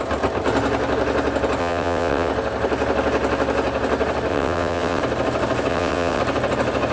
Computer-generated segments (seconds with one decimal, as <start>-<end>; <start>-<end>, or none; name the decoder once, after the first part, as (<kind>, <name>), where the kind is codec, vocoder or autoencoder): 1.6-2.3 (vocoder, WaveNeXt); 4.3-5.0; 5.7-6.2